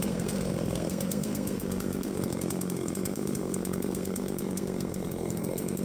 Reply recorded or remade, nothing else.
remade